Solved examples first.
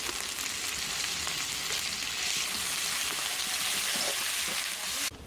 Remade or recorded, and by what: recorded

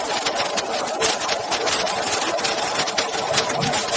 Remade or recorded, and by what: recorded